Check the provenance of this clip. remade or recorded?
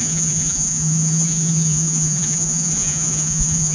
remade